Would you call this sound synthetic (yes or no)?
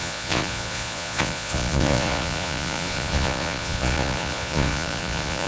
yes